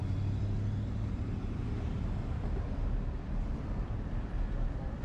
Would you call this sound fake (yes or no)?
no